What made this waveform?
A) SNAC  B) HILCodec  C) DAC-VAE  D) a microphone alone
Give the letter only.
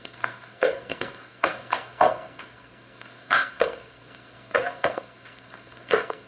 A